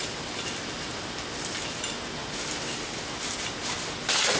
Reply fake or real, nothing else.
real